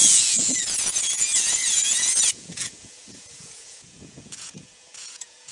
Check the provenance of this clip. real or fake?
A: fake